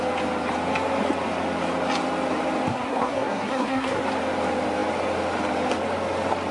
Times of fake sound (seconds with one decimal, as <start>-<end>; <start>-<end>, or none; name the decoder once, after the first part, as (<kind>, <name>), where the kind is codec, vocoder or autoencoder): 2.7-4.0 (codec, SNAC)